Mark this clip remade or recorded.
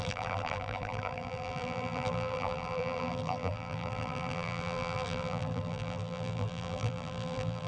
remade